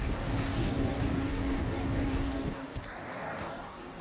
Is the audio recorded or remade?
remade